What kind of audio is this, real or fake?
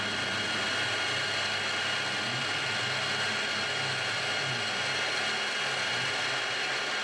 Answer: real